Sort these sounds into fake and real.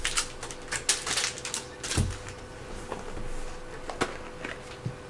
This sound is real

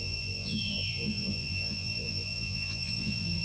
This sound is fake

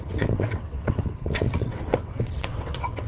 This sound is fake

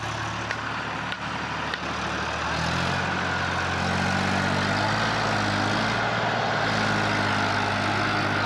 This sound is real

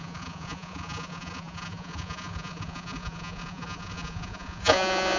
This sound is fake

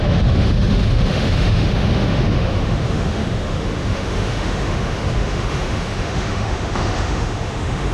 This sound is fake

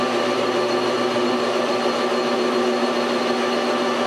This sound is real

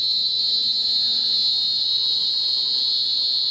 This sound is real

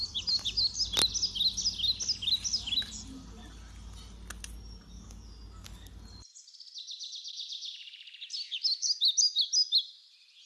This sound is real